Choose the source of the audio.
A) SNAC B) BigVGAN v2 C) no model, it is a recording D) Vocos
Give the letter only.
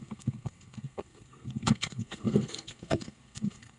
A